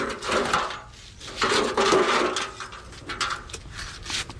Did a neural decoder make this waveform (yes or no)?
no